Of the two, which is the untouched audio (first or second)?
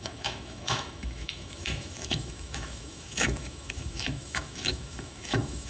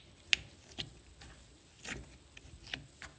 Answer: second